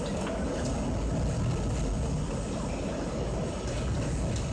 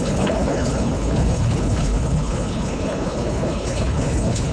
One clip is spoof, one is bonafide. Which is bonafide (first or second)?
first